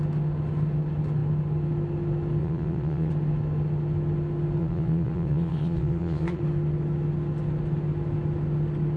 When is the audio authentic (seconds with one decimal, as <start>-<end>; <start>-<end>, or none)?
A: 0.0-2.4; 3.1-4.6; 6.4-9.0